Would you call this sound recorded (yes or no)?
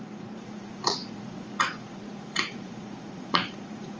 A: no